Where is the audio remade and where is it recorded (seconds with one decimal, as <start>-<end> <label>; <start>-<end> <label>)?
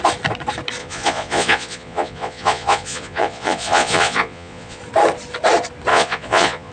0.0-0.8 recorded; 0.8-4.8 remade; 4.8-5.9 recorded; 5.9-6.7 remade